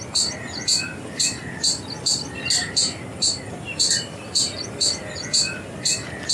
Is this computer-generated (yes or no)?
no